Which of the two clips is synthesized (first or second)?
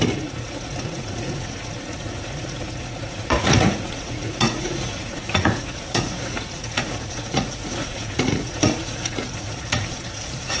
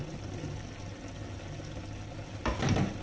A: first